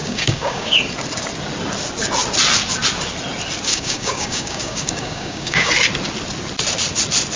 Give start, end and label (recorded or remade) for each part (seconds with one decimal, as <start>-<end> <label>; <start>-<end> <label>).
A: 0.0-0.8 remade; 0.8-3.7 recorded; 3.7-5.7 remade; 5.7-7.4 recorded